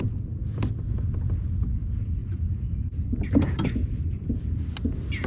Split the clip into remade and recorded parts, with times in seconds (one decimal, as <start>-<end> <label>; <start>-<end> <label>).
0.0-2.2 recorded; 2.2-2.7 remade; 2.7-5.3 recorded